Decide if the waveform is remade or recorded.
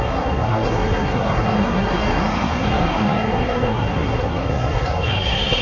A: remade